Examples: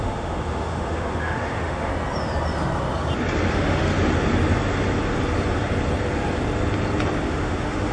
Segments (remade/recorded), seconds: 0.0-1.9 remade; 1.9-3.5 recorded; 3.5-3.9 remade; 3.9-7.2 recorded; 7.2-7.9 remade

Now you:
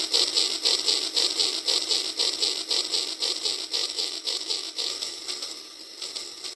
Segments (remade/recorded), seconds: 0.0-3.8 recorded; 3.8-5.2 remade; 5.2-6.6 recorded

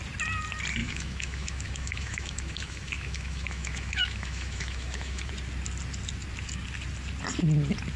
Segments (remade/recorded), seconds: 0.0-0.8 recorded; 0.8-5.3 remade; 5.3-8.0 recorded

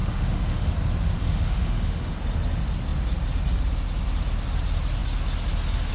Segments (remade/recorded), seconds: 0.0-0.7 remade; 0.7-1.2 recorded; 1.2-2.1 remade; 2.1-5.9 recorded

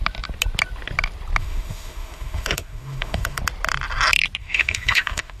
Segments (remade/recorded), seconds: 0.0-1.4 recorded; 1.4-3.4 remade; 3.4-4.4 recorded; 4.4-5.4 remade

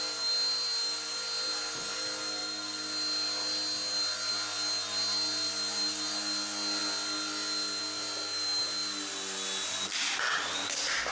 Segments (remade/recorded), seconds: 0.0-11.1 recorded

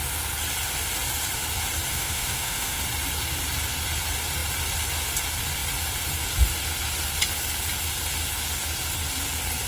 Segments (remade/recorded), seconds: 0.0-1.9 recorded; 1.9-2.8 remade; 2.8-9.7 recorded

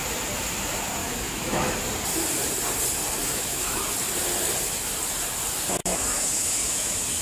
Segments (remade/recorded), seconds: 0.0-1.0 recorded; 1.0-1.8 remade; 1.8-3.2 recorded; 3.2-3.8 remade; 3.8-5.8 recorded; 5.8-7.2 remade